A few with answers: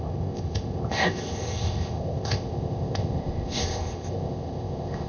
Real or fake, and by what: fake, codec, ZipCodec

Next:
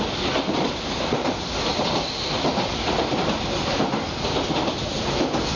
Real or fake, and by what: real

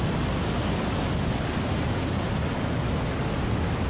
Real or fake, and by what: real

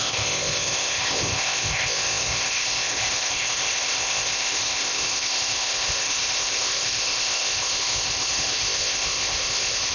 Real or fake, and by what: fake, codec, ZipCodec